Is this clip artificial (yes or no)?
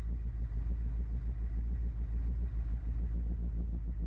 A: no